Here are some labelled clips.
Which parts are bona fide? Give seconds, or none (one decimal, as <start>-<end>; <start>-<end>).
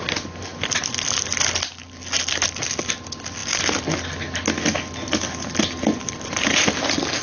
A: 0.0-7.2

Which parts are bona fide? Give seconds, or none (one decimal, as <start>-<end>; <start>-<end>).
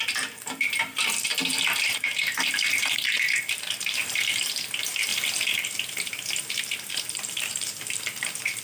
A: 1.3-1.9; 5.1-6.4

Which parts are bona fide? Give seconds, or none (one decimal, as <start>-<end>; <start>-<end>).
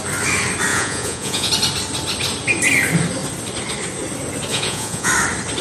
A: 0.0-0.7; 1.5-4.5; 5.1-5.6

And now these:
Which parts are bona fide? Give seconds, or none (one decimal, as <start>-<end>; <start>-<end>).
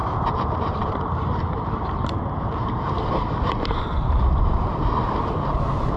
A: none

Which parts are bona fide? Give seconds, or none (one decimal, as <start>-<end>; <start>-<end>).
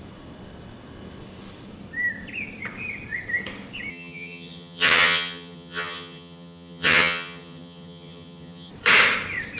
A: 0.0-3.9; 8.7-9.6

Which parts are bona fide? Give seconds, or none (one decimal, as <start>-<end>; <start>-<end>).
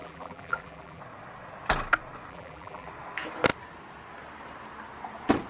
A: 1.0-2.3; 2.9-5.5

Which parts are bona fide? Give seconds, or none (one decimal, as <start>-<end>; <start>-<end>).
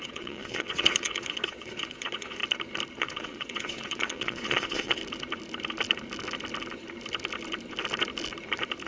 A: 2.4-3.0; 5.0-8.9